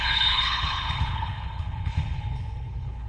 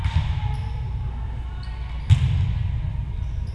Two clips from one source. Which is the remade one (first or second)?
first